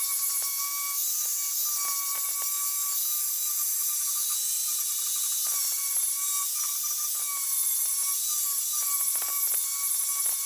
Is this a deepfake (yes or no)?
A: no